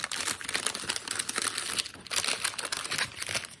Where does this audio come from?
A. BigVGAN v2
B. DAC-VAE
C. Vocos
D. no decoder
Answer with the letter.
D